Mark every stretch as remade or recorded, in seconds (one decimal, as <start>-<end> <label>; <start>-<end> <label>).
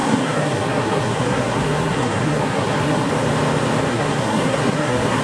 0.0-3.1 remade; 3.1-3.9 recorded; 3.9-5.2 remade